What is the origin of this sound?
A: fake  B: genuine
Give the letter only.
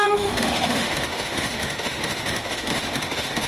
A